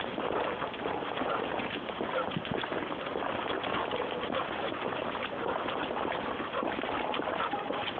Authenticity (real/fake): real